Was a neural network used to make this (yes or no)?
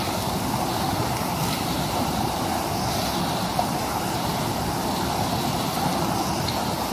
no